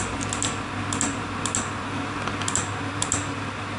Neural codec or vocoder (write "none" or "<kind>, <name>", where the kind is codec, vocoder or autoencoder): none